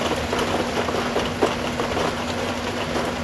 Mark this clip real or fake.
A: real